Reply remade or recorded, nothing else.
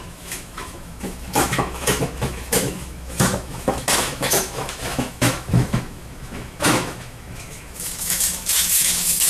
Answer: remade